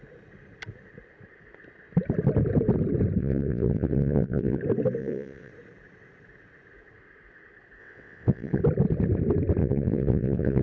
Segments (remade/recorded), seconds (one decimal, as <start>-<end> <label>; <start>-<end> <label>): 0.0-3.2 recorded; 3.2-4.6 remade; 4.6-5.0 recorded; 5.0-5.5 remade; 5.5-7.8 recorded; 7.8-8.6 remade; 8.6-9.6 recorded; 9.6-10.6 remade